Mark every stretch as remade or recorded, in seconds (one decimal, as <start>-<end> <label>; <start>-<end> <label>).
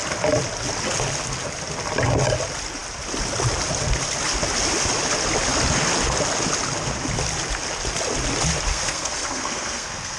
0.0-8.7 recorded; 8.7-10.2 remade